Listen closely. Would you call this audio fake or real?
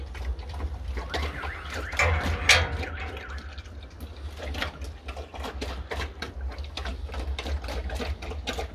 real